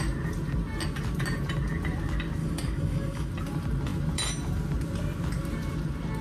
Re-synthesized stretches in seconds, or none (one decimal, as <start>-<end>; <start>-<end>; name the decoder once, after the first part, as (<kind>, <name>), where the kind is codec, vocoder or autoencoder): 2.4-3.3 (codec, DAC)